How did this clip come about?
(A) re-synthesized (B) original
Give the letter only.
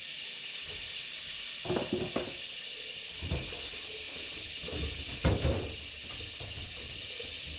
B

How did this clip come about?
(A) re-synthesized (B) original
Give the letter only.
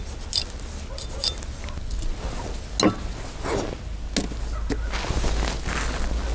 B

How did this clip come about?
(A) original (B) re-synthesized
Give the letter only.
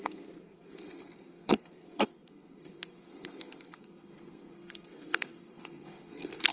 B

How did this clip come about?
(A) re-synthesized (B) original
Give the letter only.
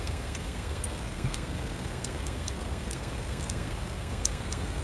A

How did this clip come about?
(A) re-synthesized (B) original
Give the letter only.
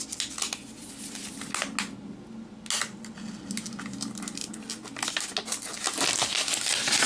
B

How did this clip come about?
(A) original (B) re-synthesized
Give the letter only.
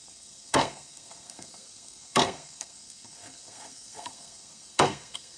B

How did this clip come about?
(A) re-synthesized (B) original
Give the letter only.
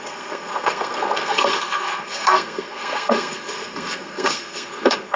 A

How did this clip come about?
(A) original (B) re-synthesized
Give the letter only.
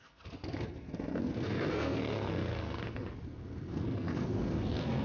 B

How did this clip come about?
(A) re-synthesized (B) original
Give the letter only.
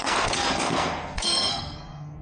A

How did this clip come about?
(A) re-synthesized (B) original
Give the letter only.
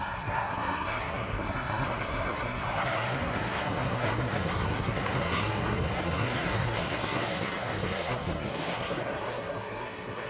A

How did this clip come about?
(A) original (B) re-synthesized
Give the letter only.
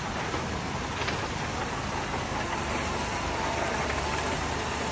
A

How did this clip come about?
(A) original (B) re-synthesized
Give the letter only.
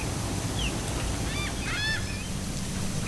A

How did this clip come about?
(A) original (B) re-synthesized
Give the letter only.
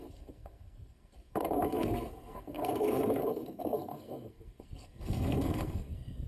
B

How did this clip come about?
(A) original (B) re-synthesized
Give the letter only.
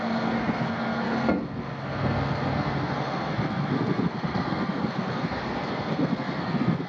B